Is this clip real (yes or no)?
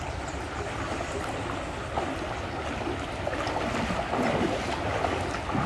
yes